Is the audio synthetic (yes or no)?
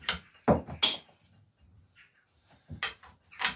no